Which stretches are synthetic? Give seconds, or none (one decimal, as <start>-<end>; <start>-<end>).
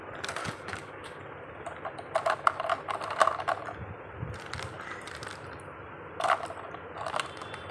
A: 0.4-1.2